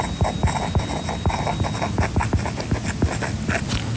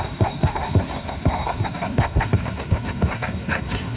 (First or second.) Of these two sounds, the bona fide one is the first